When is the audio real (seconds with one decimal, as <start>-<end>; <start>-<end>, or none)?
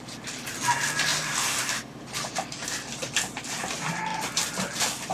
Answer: 0.0-1.1; 2.1-5.1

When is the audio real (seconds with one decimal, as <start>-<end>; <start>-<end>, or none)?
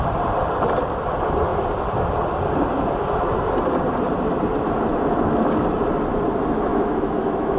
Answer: 0.0-6.7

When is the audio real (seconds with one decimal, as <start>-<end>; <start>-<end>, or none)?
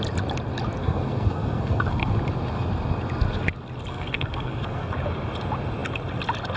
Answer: 0.0-0.8; 2.1-3.9; 4.9-6.6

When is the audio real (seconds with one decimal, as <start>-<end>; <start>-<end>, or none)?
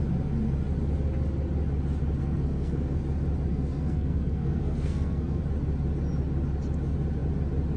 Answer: 0.0-2.2; 3.0-3.5; 5.4-7.8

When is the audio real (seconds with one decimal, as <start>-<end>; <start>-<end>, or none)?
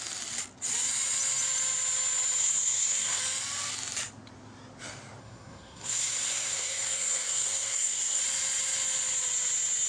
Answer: 0.0-2.4; 3.2-5.2; 8.2-9.9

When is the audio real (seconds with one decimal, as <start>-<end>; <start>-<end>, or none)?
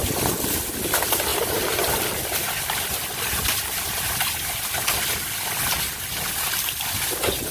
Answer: 0.0-1.3; 5.8-7.5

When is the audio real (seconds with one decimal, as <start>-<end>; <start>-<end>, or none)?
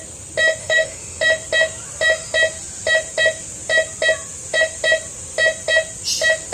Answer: 0.0-0.6; 1.2-6.5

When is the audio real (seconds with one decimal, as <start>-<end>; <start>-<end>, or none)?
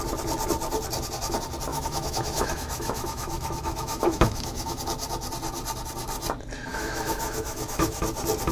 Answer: 0.0-1.7; 4.8-6.7; 8.0-8.5